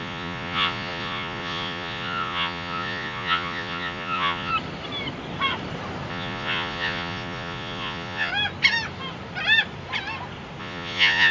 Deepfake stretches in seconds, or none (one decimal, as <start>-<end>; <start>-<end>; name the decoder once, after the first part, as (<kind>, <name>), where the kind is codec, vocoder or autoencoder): 0.0-4.5 (vocoder, Vocos); 6.1-8.3; 10.6-11.3